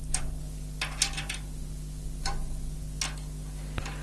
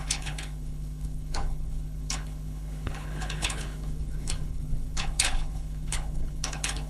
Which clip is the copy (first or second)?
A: second